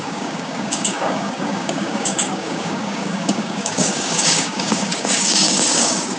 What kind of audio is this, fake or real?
fake